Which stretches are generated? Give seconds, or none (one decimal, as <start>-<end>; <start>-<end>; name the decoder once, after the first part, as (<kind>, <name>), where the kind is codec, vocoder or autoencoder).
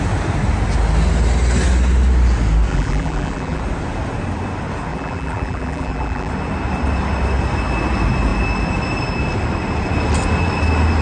2.7-3.6 (vocoder, BigVGAN v2); 4.9-6.3